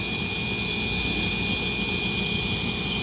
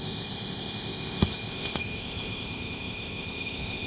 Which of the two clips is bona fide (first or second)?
first